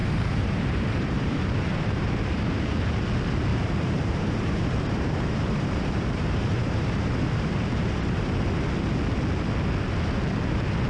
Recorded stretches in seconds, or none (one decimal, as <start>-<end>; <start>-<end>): 2.8-3.5; 8.4-10.9